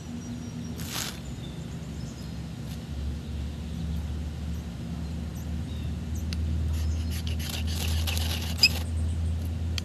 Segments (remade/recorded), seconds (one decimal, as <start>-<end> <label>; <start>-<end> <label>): 0.0-9.8 recorded